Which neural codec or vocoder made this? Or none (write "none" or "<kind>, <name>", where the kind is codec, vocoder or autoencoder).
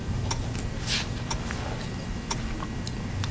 none